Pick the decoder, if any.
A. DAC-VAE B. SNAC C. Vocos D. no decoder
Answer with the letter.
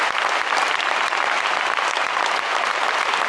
D